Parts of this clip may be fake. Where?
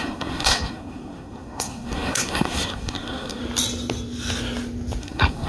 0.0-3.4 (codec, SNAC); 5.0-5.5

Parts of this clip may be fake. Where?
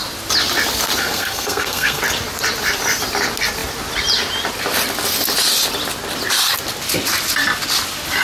1.0-2.0 (codec, SNAC)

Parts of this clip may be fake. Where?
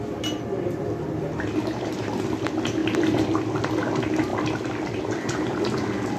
none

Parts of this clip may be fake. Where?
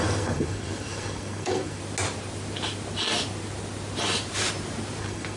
0.0-1.8 (codec, SNAC); 5.0-5.4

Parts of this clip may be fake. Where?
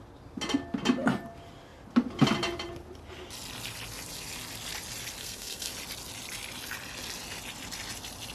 5.2-5.7 (codec, SNAC)